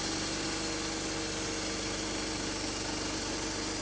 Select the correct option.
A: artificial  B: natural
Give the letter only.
B